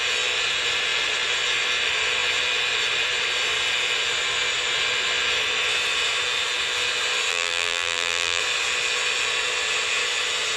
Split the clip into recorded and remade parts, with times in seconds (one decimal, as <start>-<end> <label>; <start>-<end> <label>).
0.0-7.3 recorded; 7.3-8.4 remade; 8.4-10.6 recorded